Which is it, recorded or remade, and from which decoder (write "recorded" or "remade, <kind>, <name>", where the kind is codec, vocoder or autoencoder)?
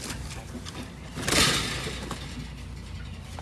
recorded